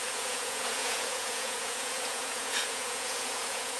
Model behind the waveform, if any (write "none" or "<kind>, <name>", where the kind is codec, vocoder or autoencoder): vocoder, Vocos